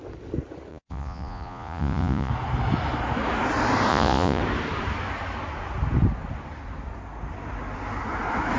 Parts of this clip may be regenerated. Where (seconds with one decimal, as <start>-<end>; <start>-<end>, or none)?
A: 0.7-2.3; 3.9-4.4